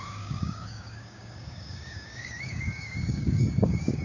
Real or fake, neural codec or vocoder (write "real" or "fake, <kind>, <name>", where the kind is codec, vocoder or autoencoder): fake, codec, DAC